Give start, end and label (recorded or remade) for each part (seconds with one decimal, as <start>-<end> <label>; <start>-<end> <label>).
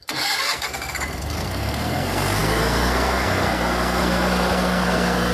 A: 0.0-5.3 remade